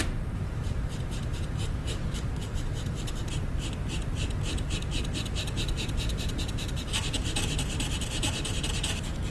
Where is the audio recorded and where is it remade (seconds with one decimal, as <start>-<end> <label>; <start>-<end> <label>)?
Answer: 0.0-3.2 remade; 3.2-4.8 recorded; 4.8-9.3 remade